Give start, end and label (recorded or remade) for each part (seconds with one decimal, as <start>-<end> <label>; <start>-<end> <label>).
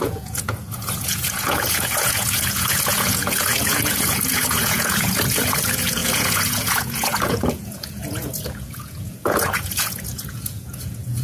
0.0-11.2 remade